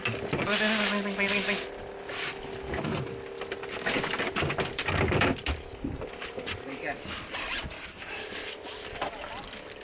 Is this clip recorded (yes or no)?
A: yes